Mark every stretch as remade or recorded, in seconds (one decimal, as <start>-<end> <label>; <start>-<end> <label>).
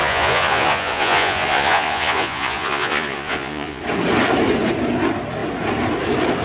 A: 0.0-3.8 remade; 3.8-6.4 recorded